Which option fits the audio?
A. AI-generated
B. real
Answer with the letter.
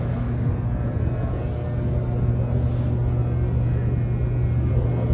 B